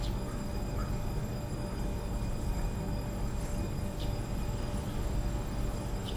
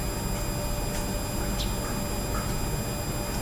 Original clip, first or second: second